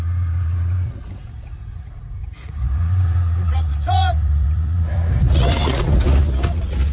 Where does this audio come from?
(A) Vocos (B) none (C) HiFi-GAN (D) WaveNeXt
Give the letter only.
A